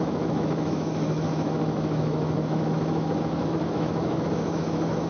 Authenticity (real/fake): fake